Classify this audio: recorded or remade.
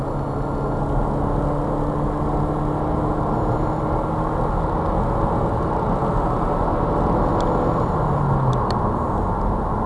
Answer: recorded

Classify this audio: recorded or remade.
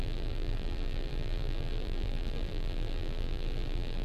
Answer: remade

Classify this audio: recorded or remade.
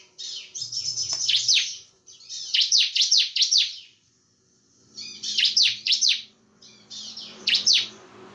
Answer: remade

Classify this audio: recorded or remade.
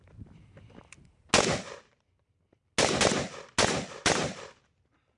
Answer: recorded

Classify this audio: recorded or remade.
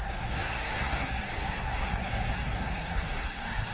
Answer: remade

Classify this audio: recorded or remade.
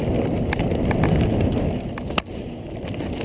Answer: recorded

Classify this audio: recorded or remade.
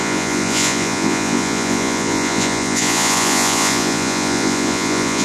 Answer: remade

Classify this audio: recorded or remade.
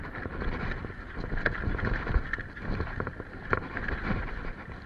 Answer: recorded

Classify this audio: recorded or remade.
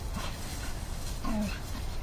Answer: recorded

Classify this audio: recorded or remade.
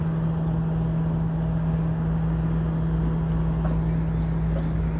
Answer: recorded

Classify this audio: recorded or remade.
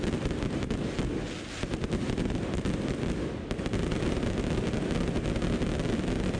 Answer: recorded